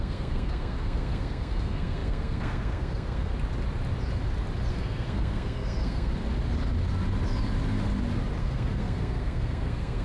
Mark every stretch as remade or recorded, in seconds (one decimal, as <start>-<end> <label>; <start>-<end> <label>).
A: 0.0-3.3 remade; 3.3-4.7 recorded; 4.7-6.1 remade; 6.1-8.4 recorded; 8.4-10.0 remade